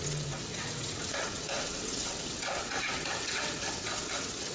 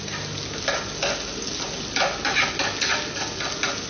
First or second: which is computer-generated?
first